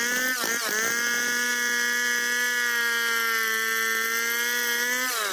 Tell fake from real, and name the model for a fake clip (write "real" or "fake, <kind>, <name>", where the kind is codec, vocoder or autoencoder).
real